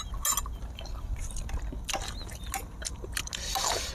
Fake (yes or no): no